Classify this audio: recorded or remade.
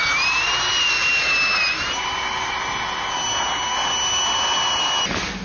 recorded